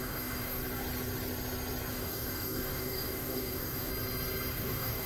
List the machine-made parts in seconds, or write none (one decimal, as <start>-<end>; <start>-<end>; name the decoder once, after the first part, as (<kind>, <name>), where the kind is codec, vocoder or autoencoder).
0.0-0.6 (codec, DAC); 1.9-3.9; 4.5-5.1